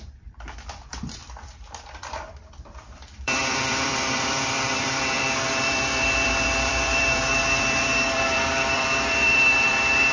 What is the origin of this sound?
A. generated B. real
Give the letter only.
A